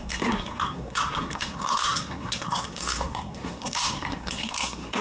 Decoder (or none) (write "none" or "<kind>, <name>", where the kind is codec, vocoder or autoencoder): codec, SNAC